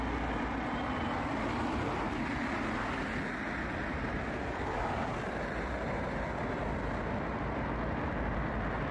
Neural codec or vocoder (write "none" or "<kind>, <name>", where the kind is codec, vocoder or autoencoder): none